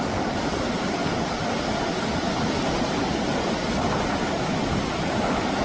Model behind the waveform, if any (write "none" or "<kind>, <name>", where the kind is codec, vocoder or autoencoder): none